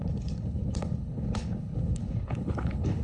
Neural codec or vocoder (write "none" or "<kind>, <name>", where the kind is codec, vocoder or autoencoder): codec, HILCodec